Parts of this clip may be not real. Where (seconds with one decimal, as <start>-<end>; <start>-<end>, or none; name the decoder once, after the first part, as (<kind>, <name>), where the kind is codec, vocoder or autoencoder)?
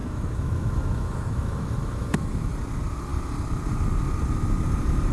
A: 0.0-2.5 (autoencoder, DAC-VAE)